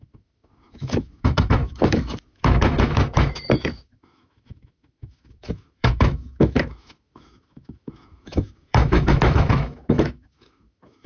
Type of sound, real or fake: fake